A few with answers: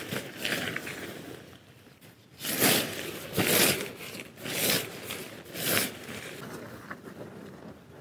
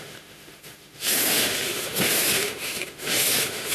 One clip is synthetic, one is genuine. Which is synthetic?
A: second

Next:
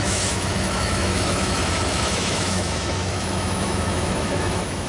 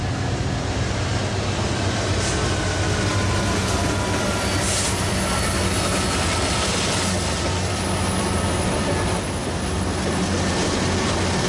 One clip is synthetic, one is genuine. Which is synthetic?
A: first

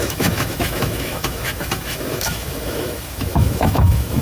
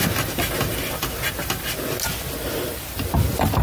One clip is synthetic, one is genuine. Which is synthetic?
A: first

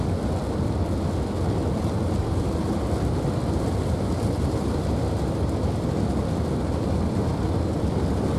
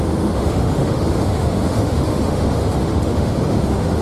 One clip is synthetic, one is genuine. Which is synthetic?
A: second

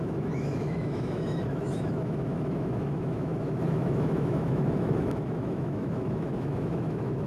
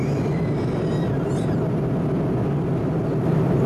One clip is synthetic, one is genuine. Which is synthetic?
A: first